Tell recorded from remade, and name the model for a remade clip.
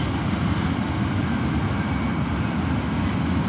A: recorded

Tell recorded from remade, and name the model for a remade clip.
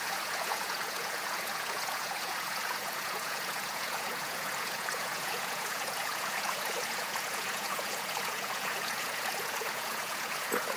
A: remade, vocoder, Vocos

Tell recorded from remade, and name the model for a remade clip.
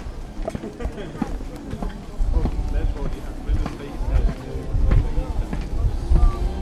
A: recorded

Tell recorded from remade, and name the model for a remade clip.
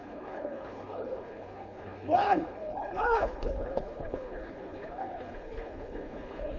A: remade, codec, HILCodec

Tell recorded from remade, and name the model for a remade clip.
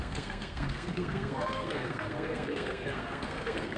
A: remade, codec, SNAC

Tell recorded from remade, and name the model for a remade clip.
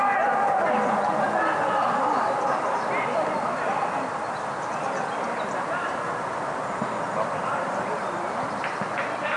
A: recorded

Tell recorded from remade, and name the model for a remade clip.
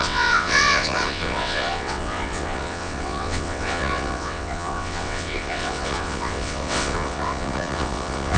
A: remade, vocoder, WaveNeXt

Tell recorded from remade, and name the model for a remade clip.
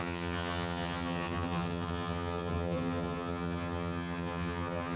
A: remade, vocoder, HiFi-GAN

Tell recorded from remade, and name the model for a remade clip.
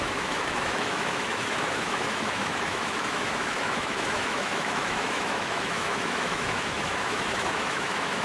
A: remade, autoencoder, DAC-VAE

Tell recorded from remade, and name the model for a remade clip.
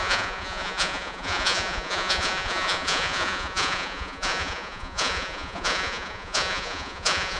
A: remade, vocoder, Vocos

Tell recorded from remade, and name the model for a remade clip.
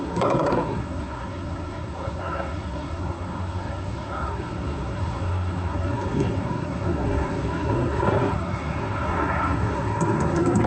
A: remade, codec, SNAC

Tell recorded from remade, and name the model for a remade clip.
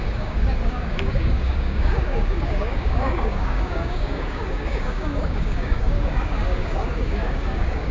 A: remade, codec, DAC